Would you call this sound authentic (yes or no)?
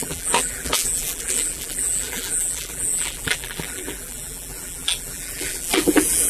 no